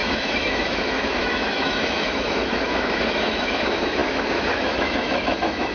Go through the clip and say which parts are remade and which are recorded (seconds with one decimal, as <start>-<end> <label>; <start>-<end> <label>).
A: 0.0-5.7 remade